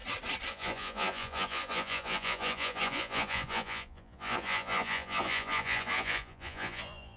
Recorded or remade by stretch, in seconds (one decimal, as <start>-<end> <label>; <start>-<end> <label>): 0.0-0.5 recorded; 0.5-7.2 remade